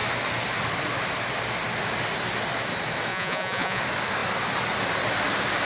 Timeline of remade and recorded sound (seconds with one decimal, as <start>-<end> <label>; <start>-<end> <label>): 0.0-3.1 recorded; 3.1-3.8 remade; 3.8-5.7 recorded